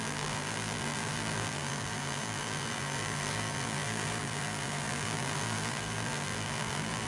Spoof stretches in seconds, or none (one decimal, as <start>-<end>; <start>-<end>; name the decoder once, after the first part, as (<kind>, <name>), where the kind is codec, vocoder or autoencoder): 0.0-7.1 (vocoder, BigVGAN v2)

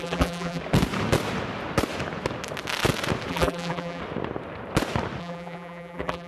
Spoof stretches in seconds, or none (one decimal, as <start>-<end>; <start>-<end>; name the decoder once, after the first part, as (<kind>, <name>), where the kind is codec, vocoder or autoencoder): 0.0-0.6 (vocoder, BigVGAN v2); 3.3-4.0; 5.2-6.3

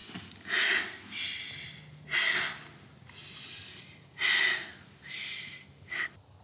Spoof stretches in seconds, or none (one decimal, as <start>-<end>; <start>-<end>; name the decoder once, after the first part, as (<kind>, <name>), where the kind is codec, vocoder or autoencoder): none